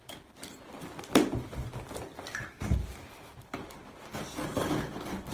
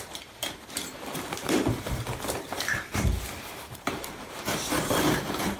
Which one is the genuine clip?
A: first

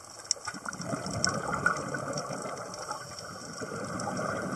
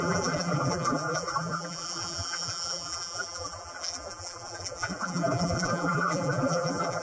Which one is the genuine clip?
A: first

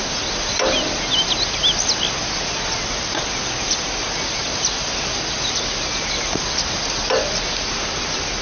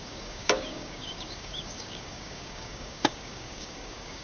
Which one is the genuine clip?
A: first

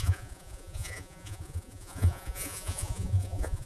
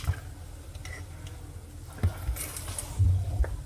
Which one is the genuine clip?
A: second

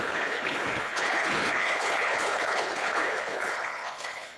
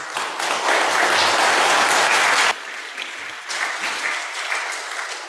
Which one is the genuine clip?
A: second